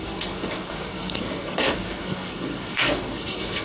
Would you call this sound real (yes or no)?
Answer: no